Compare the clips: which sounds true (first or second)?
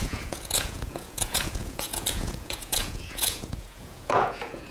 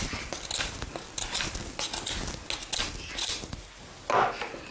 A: second